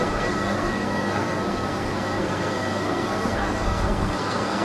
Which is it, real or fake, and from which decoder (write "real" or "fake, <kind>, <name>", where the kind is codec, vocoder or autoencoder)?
fake, codec, SNAC